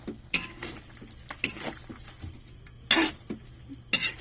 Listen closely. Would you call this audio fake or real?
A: real